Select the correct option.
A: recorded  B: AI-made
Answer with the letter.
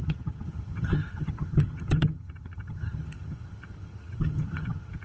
B